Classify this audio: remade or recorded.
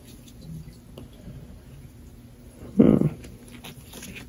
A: recorded